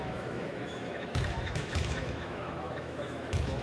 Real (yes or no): no